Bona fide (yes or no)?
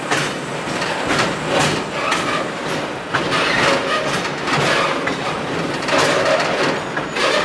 yes